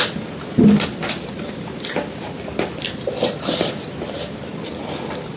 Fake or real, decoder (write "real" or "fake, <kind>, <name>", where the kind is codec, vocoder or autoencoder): real